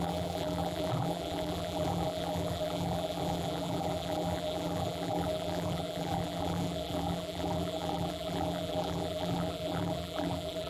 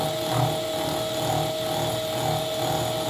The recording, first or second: second